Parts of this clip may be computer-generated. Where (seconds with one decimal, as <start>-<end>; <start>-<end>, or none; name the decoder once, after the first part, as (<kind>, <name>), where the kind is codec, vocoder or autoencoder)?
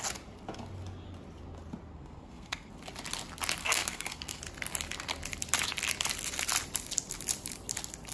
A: 1.9-2.7 (codec, SNAC); 3.6-4.4